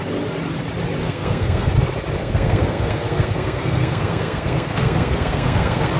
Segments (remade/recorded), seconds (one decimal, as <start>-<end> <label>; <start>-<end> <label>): 0.0-1.0 recorded; 1.0-1.7 remade; 1.7-2.2 recorded; 2.2-6.0 remade